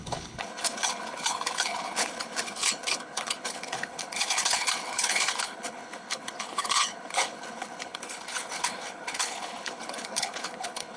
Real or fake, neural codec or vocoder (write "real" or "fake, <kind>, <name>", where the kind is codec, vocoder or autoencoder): fake, codec, HILCodec